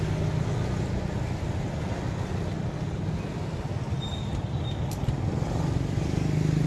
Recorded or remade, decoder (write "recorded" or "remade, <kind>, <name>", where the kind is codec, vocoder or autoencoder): recorded